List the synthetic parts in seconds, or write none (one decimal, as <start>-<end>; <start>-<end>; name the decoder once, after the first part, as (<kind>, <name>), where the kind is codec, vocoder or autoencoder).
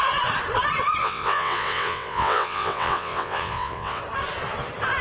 1.0-4.0 (vocoder, WaveNeXt)